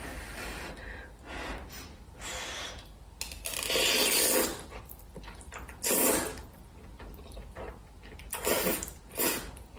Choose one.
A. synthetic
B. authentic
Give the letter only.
B